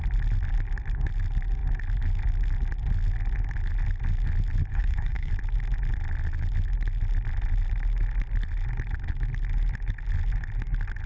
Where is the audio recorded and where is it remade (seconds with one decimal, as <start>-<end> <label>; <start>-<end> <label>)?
0.0-4.7 recorded; 4.7-5.3 remade; 5.3-11.1 recorded